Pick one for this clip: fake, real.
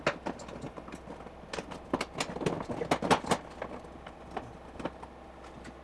real